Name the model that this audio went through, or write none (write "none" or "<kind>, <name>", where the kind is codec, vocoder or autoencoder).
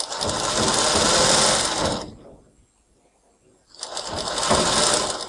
none